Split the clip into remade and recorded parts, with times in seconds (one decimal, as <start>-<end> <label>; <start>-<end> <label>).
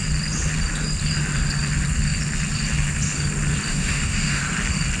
0.0-3.7 recorded; 3.7-4.4 remade; 4.4-5.0 recorded